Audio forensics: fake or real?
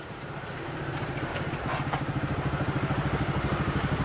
fake